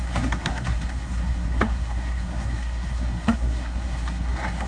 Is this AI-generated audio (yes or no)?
yes